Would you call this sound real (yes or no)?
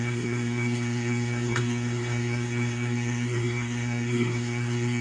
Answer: no